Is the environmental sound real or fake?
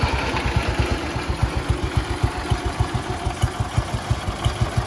real